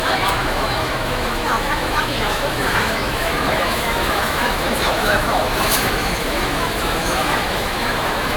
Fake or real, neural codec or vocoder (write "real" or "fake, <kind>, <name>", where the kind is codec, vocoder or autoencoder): fake, autoencoder, DAC-VAE